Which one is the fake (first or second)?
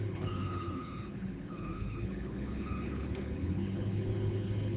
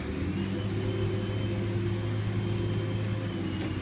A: first